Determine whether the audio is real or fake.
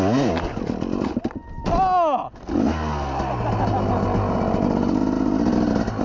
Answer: real